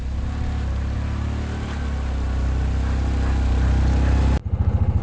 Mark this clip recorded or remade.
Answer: recorded